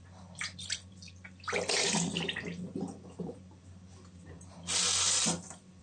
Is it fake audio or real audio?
fake